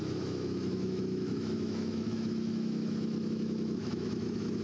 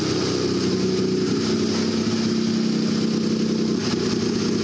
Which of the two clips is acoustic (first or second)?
second